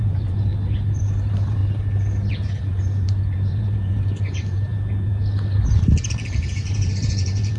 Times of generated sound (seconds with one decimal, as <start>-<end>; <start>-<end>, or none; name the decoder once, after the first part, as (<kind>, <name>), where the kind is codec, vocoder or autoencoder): 0.0-0.5 (vocoder, BigVGAN v2); 1.0-1.6; 2.3-4.7; 5.8-7.6